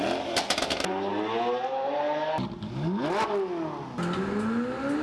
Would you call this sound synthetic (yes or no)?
no